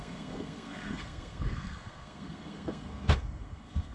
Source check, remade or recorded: remade